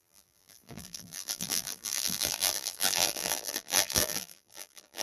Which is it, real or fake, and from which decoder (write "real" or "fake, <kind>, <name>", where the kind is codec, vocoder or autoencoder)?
fake, vocoder, BigVGAN v2